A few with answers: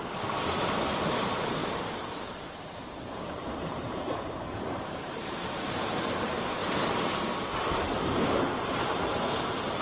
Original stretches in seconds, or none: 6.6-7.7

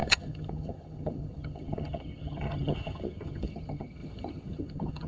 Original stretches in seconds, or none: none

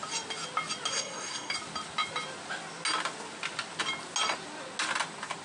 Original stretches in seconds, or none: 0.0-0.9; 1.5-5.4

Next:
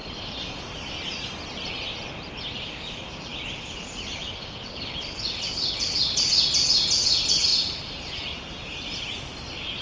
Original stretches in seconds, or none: 0.0-9.8

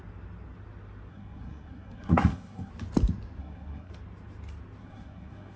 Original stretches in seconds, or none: 0.0-1.1; 2.7-3.4; 3.9-4.8

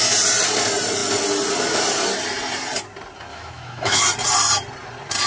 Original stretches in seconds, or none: 0.0-3.3; 4.0-5.3